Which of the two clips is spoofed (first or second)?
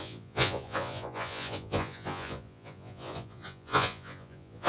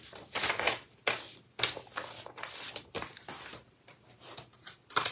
first